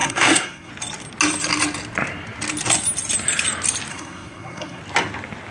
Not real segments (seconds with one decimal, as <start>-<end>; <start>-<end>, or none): 0.0-0.7; 3.9-4.8